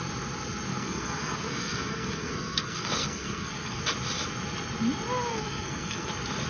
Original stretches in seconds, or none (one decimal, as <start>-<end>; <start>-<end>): 0.0-0.7; 3.8-5.3; 6.1-6.5